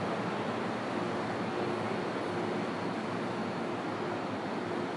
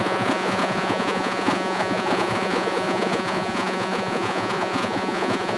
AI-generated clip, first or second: second